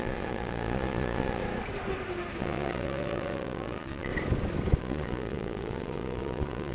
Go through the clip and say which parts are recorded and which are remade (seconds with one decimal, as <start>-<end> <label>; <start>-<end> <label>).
0.0-1.4 remade; 1.4-2.4 recorded; 2.4-4.1 remade; 4.1-4.8 recorded; 4.8-6.7 remade